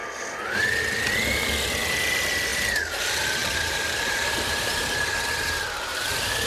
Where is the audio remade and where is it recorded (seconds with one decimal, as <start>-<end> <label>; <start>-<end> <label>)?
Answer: 0.0-3.4 recorded; 3.4-6.5 remade